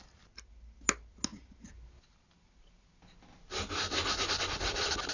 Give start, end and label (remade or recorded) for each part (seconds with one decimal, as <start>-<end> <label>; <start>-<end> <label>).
0.0-5.1 recorded